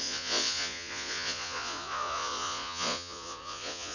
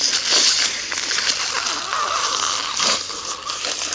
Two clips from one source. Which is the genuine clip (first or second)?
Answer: second